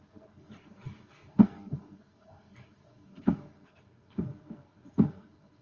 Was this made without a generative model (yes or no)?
no